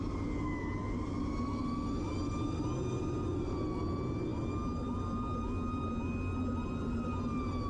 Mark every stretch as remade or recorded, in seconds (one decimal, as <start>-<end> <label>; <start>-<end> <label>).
0.0-7.7 recorded